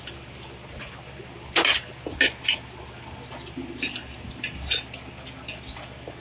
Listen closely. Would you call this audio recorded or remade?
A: recorded